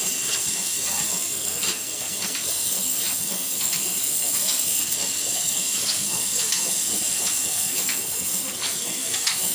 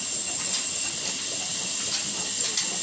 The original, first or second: second